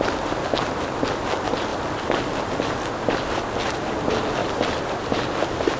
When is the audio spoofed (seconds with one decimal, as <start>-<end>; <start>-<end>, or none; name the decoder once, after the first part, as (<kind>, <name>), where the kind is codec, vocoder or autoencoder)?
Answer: 1.7-2.8 (vocoder, BigVGAN v2)